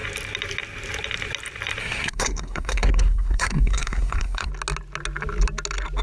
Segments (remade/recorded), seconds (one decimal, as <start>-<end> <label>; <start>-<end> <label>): 0.0-1.8 recorded; 1.8-4.5 remade; 4.5-6.0 recorded